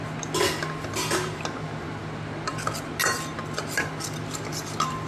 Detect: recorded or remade recorded